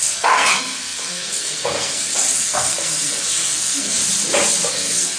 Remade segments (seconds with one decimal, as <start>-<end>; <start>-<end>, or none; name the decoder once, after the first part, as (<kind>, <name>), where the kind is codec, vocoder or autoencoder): 0.0-4.0 (codec, SNAC); 4.7-5.2